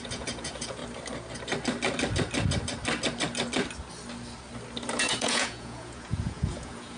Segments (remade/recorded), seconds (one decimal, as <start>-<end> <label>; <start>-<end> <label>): 0.0-0.8 remade; 0.8-5.0 recorded; 5.0-7.0 remade

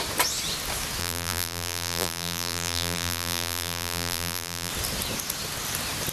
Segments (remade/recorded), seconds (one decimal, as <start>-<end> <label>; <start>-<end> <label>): 0.0-1.0 recorded; 1.0-4.7 remade; 4.7-6.1 recorded

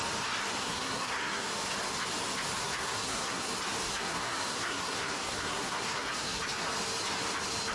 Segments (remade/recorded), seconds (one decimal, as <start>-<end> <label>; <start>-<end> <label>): 0.0-0.6 recorded; 0.6-1.5 remade; 1.5-2.6 recorded; 2.6-3.5 remade; 3.5-3.9 recorded; 3.9-6.4 remade; 6.4-7.7 recorded

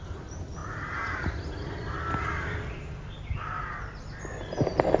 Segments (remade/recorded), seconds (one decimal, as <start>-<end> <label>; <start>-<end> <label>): 0.0-0.6 recorded; 0.6-3.6 remade; 3.6-5.0 recorded

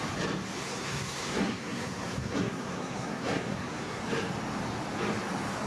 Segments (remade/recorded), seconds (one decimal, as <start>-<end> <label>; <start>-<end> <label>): 0.0-0.6 recorded; 0.6-4.0 remade; 4.0-5.7 recorded

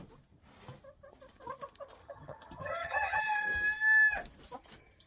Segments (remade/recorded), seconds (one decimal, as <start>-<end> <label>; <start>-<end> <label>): 0.0-2.0 recorded; 2.0-3.2 remade; 3.2-5.1 recorded

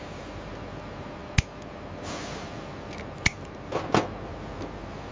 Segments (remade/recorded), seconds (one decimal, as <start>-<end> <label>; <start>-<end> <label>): 0.0-5.1 recorded

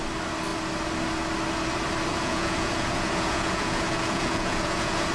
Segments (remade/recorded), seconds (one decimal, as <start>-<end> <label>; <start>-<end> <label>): 0.0-2.1 recorded; 2.1-5.1 remade